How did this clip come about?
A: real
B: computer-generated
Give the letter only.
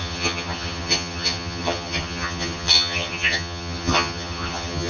B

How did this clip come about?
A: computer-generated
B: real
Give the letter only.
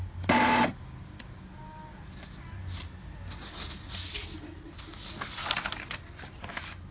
B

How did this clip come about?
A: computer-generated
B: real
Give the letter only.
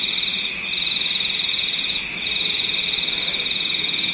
B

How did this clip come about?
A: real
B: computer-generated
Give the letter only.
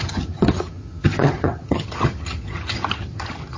B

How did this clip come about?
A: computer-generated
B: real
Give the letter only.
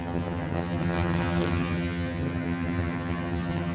A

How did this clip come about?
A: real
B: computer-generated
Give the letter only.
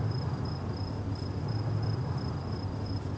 A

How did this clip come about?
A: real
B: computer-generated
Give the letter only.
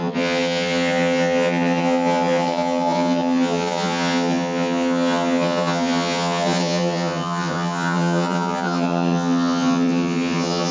B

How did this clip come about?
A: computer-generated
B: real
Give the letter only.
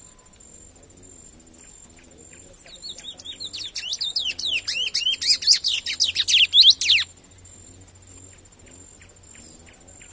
B